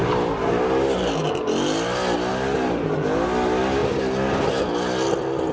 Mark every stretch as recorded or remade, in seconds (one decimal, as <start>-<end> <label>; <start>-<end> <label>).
0.0-5.5 recorded